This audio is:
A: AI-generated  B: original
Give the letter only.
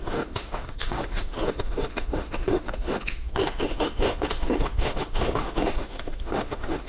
A